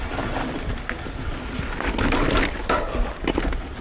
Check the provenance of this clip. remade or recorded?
recorded